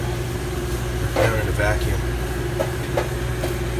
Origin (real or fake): real